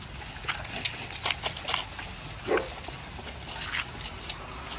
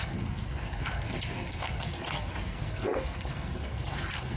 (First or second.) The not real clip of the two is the second